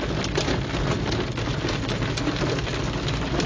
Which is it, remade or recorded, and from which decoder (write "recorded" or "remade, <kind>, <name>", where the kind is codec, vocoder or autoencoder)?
recorded